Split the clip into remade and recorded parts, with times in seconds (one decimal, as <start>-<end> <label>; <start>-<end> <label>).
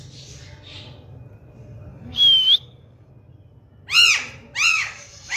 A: 0.0-1.9 recorded; 1.9-3.1 remade; 3.1-4.7 recorded; 4.7-5.4 remade